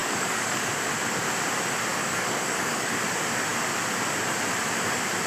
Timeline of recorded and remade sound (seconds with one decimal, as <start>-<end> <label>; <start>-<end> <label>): 0.0-0.7 remade; 0.7-1.9 recorded; 1.9-2.9 remade; 2.9-5.3 recorded